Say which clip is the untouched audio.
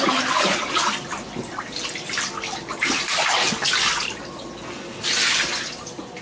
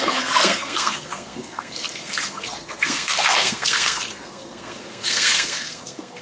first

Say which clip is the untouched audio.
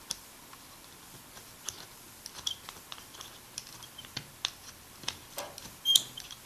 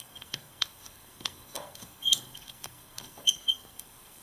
first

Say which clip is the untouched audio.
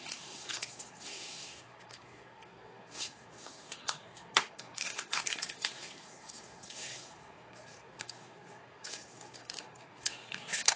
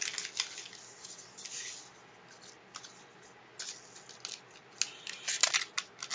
second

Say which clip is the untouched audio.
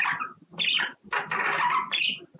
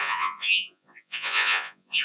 first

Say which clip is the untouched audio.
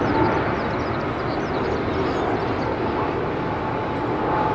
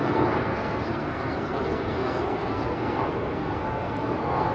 first